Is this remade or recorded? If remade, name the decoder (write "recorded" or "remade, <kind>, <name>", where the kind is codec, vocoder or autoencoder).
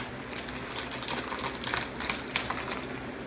recorded